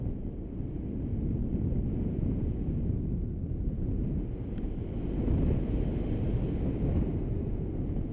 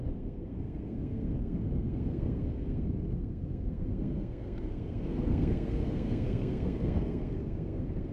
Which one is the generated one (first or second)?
second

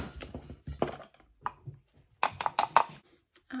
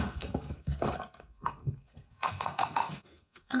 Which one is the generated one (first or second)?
second